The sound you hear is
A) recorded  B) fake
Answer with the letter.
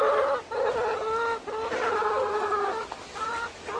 A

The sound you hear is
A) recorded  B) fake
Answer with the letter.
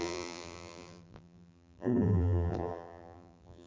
B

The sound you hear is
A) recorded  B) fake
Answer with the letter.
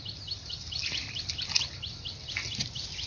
A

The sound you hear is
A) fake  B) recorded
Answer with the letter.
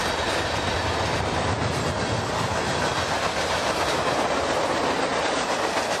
B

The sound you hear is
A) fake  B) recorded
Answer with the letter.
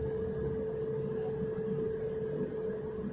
B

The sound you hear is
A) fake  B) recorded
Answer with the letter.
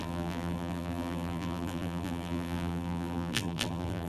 A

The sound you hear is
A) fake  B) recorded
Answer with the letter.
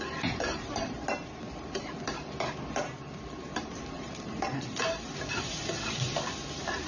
A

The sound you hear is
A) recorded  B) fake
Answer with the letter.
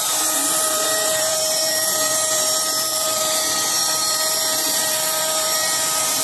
B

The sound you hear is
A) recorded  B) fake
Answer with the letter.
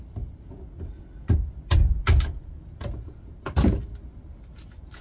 A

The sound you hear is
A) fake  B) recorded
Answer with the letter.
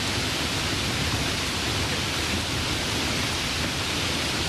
B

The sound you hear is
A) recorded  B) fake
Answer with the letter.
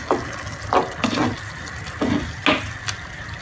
A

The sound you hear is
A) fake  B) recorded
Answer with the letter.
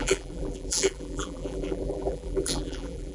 A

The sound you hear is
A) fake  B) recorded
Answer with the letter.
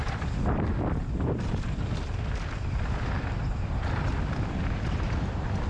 A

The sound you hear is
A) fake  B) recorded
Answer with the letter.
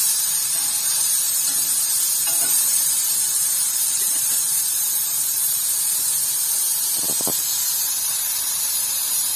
A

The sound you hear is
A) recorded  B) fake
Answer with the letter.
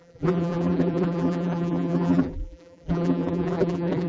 B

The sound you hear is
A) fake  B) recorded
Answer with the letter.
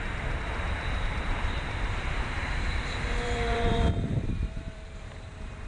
A